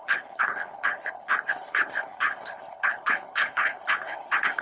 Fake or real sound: fake